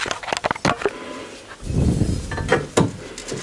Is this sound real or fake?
real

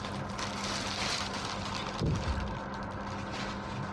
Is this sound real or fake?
real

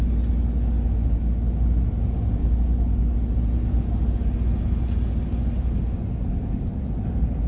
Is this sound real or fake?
real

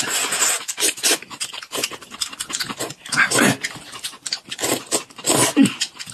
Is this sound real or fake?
real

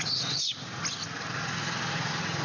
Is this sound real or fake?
real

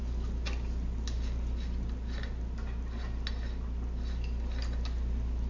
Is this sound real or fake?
real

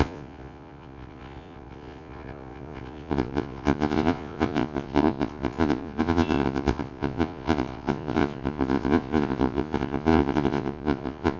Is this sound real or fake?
fake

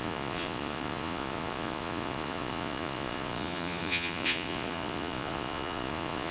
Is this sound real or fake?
fake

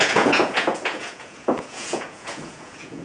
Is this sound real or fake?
fake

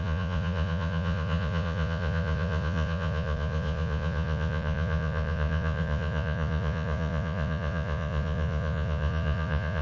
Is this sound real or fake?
fake